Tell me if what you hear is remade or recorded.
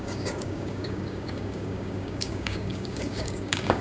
remade